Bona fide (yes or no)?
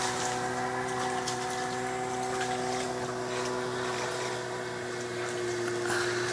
yes